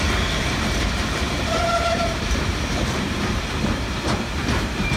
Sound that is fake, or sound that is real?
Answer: fake